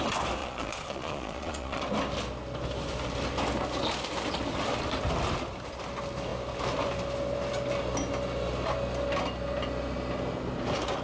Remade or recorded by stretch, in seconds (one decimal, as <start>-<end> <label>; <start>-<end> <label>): 0.0-0.4 recorded; 0.4-1.8 remade; 1.8-11.0 recorded